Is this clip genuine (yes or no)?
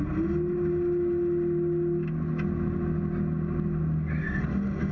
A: yes